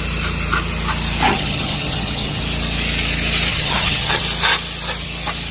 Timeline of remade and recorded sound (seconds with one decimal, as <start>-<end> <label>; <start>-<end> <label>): 0.0-1.3 recorded; 1.3-2.4 remade; 2.4-3.5 recorded; 3.5-4.2 remade; 4.2-5.5 recorded